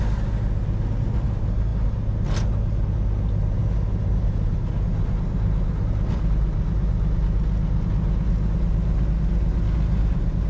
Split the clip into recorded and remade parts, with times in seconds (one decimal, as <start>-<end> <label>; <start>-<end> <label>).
0.0-10.5 recorded